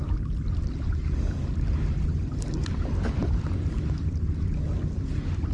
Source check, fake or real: real